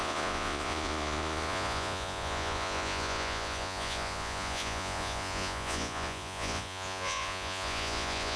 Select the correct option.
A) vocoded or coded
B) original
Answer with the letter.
A